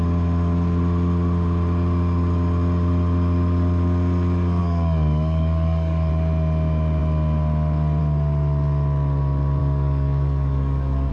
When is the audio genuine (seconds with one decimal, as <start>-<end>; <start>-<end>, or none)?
0.0-4.6; 6.1-9.6